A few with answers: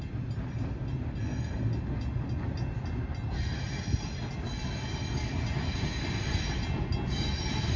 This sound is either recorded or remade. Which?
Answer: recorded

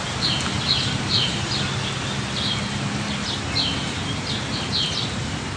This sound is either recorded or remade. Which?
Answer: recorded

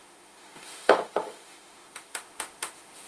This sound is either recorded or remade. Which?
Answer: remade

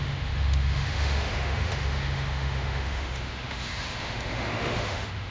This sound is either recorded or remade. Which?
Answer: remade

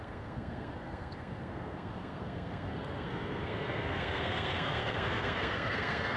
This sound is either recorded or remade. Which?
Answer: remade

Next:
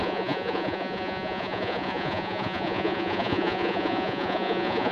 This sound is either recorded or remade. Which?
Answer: remade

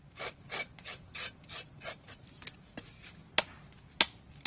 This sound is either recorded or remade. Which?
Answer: recorded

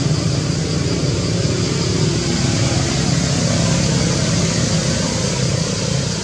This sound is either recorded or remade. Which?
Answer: recorded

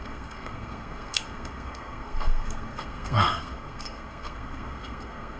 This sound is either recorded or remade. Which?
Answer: remade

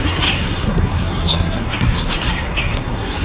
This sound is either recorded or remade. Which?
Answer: remade